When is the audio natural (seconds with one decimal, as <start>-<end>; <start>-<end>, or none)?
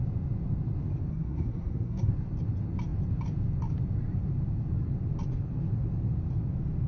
0.0-1.1; 2.1-6.9